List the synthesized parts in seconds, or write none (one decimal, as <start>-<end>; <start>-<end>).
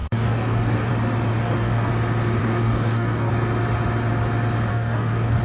0.0-0.9; 1.3-1.9; 2.4-3.3; 4.7-5.4